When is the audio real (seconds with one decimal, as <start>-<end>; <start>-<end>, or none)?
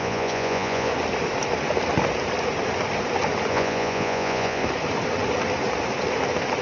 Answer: 0.9-3.5; 4.6-6.6